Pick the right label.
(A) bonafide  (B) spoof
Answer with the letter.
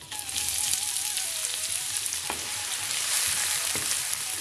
A